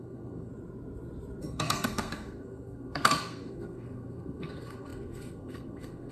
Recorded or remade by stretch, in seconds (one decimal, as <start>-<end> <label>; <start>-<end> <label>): 0.0-0.5 remade; 0.5-1.4 recorded; 1.4-6.1 remade